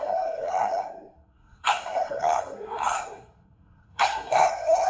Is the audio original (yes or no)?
no